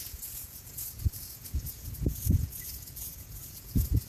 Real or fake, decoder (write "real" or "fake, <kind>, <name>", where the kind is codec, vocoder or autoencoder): fake, vocoder, Vocos